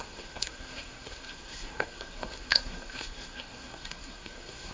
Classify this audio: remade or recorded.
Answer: remade